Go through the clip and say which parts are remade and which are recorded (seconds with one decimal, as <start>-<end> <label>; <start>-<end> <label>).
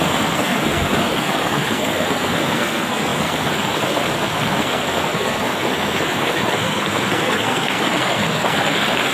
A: 0.0-9.1 remade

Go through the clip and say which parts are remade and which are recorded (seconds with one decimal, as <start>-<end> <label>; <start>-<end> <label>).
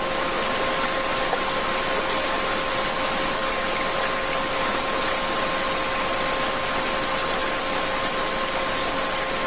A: 0.0-9.5 recorded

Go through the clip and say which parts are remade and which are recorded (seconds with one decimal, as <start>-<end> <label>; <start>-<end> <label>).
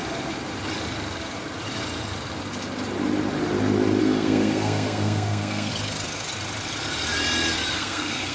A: 0.0-4.0 recorded; 4.0-5.7 remade; 5.7-7.7 recorded; 7.7-8.3 remade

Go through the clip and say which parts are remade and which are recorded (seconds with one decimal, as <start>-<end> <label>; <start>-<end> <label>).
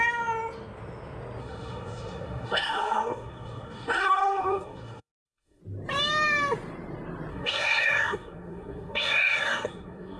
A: 0.0-1.4 recorded; 1.4-5.6 remade; 5.6-7.3 recorded; 7.3-10.2 remade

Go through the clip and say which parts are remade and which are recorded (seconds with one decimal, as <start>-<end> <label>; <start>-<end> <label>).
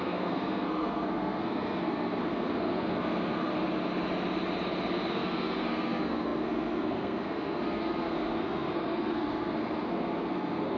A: 0.0-3.5 remade; 3.5-5.1 recorded; 5.1-10.8 remade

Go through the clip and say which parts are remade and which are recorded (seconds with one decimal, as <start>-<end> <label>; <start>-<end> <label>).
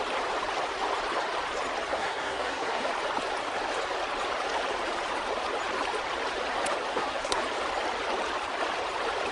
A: 0.0-1.9 recorded; 1.9-2.8 remade; 2.8-6.9 recorded; 6.9-7.4 remade; 7.4-9.3 recorded